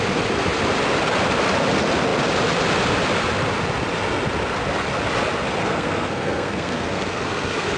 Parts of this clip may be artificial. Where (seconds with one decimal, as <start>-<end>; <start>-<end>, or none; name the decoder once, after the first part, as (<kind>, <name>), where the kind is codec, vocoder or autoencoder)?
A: 5.6-7.8 (codec, SNAC)